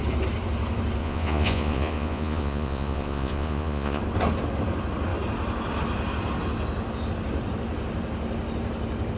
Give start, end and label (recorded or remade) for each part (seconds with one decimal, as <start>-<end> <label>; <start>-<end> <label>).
0.0-1.0 recorded; 1.0-4.0 remade; 4.0-9.2 recorded